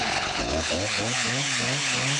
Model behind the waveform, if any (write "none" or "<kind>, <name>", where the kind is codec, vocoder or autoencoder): codec, HILCodec